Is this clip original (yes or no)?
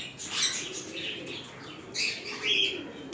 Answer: yes